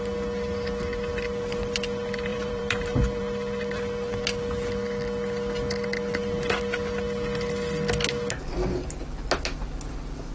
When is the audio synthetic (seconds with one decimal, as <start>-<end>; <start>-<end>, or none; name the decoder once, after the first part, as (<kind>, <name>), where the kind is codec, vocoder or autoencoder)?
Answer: 2.3-3.2 (vocoder, BigVGAN v2)